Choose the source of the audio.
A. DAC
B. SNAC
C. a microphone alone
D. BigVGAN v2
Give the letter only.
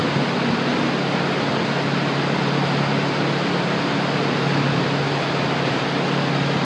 C